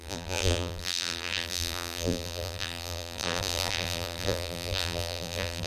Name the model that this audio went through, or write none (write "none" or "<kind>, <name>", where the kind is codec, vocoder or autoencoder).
vocoder, BigVGAN v2